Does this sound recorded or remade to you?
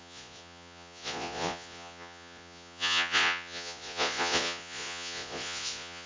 remade